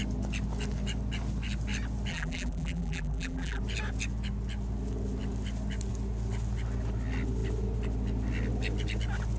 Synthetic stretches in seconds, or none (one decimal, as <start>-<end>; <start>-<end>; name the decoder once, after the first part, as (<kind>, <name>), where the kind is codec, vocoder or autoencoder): 2.1-3.6 (vocoder, BigVGAN v2)